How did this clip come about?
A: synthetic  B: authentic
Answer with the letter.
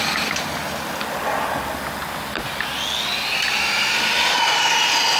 B